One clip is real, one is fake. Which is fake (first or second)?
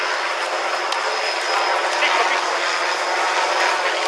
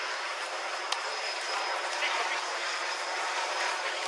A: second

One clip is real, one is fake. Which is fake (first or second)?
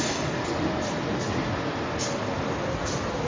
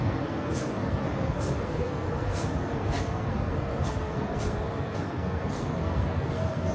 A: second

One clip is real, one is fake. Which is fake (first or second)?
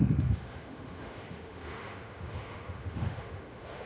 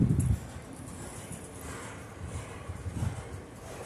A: first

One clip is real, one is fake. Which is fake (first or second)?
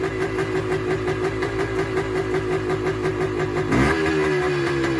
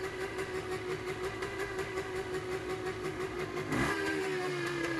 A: second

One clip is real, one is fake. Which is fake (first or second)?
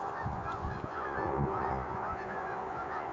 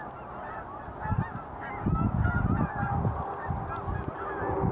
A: first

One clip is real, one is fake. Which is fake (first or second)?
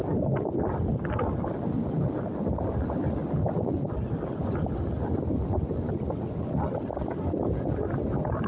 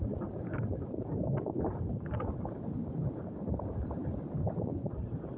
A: second